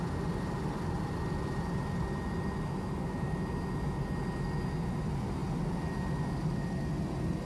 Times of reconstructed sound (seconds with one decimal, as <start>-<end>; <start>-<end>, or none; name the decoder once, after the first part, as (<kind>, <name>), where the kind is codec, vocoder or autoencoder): none